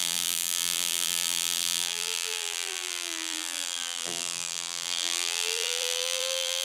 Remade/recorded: remade